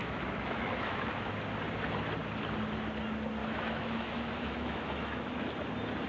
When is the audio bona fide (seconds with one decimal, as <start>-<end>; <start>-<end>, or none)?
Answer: 1.3-3.4; 5.5-6.1